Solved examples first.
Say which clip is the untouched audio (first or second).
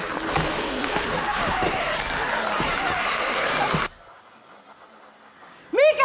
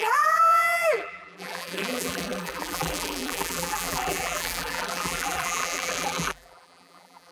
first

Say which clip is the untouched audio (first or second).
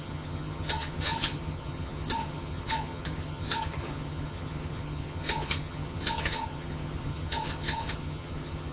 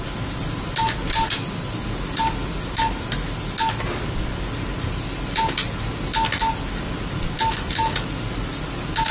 second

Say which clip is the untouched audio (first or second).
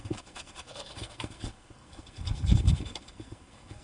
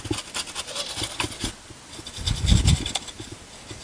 second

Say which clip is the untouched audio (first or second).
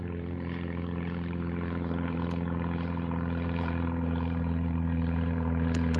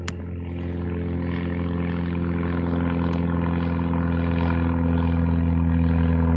second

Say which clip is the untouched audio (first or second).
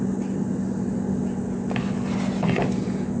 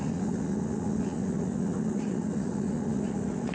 first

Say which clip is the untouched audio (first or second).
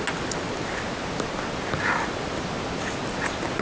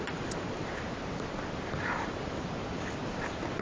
first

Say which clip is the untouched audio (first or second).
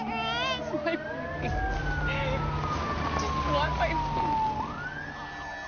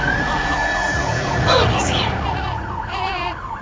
first